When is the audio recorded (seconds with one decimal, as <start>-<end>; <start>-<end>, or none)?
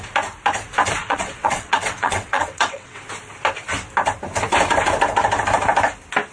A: 0.0-1.0; 3.0-6.3